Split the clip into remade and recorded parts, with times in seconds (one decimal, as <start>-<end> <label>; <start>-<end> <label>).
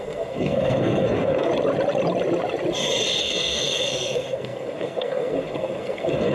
0.0-1.5 remade; 1.5-3.2 recorded; 3.2-6.3 remade